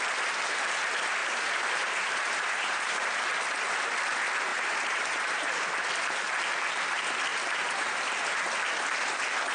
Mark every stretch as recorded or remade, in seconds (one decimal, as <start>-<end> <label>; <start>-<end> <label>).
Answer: 0.0-1.2 recorded; 1.2-3.3 remade; 3.3-4.5 recorded; 4.5-5.4 remade; 5.4-7.3 recorded; 7.3-8.1 remade; 8.1-9.5 recorded